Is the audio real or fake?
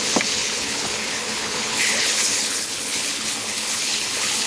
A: fake